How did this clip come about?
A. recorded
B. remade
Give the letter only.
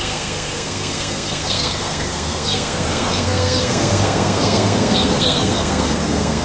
B